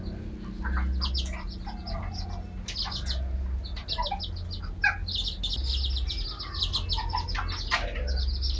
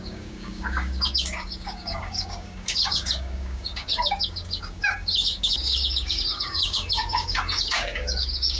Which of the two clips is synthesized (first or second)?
second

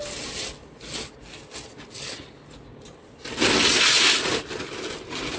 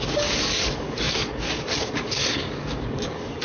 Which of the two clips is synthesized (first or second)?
second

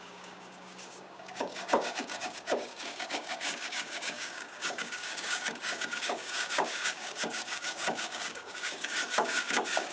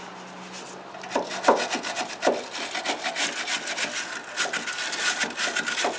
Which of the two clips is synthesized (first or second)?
first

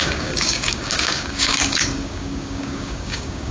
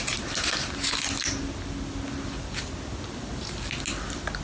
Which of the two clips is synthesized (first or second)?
first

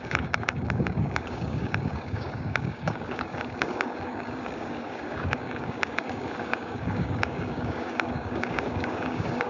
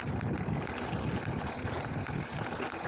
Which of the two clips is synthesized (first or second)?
first